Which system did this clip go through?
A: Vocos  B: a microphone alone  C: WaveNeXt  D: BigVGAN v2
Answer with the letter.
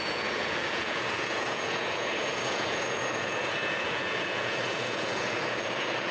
A